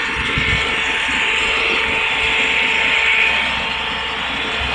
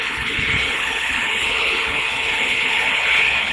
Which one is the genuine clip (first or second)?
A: first